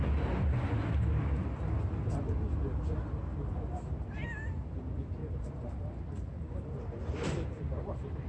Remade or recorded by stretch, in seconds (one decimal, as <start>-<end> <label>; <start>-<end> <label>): 0.0-5.2 recorded; 5.2-8.3 remade